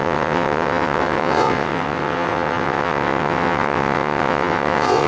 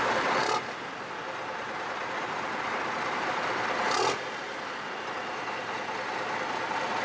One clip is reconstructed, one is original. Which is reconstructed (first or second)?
first